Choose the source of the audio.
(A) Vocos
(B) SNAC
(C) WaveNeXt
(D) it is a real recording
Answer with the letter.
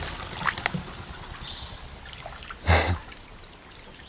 D